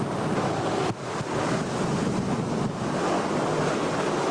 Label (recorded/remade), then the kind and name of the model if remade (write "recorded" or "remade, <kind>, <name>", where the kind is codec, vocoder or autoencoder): recorded